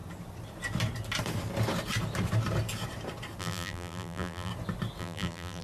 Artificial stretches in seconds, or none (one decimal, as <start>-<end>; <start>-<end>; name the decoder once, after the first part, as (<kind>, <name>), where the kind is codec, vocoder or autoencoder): 3.4-4.5 (vocoder, BigVGAN v2); 5.0-5.6